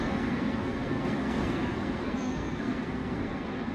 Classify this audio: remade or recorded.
remade